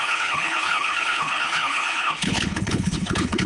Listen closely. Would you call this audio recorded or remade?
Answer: remade